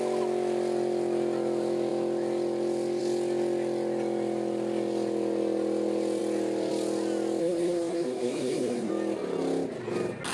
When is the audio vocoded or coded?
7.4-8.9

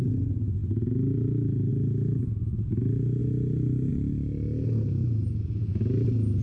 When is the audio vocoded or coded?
none

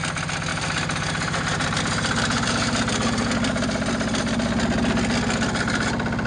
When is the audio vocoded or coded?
0.5-3.3

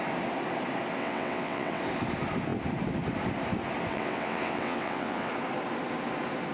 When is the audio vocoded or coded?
1.0-1.8; 3.9-5.3

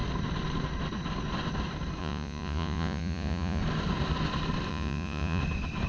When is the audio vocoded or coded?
2.0-3.6; 4.7-5.4

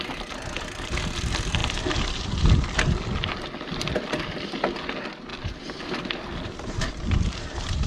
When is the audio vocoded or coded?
0.0-7.9

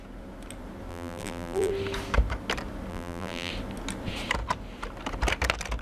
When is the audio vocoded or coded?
0.9-1.7; 2.9-3.5

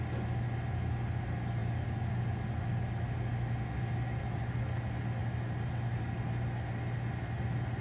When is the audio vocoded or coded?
none